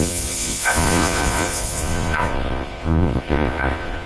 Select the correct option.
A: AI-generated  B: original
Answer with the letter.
A